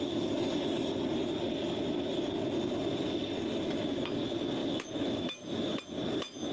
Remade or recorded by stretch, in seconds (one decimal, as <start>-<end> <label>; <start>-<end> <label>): 0.0-4.6 recorded; 4.6-5.8 remade; 5.8-6.5 recorded